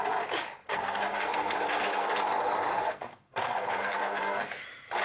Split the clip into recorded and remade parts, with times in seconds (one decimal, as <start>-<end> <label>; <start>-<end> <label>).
0.0-0.7 recorded; 0.7-2.2 remade; 2.2-2.7 recorded; 2.7-4.6 remade; 4.6-5.0 recorded